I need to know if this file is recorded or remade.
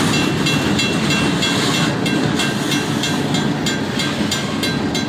recorded